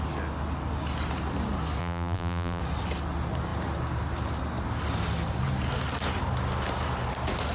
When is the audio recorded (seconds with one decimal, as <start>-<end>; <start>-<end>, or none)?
0.0-1.8; 2.6-7.5